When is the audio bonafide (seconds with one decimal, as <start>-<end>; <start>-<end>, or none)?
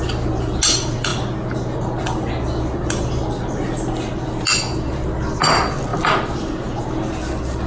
0.0-7.7